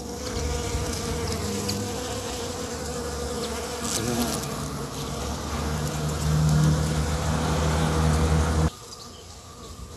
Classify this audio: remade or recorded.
recorded